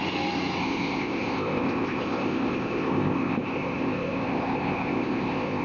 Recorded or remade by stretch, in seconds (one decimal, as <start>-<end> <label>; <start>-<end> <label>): 0.0-0.6 recorded; 0.6-5.6 remade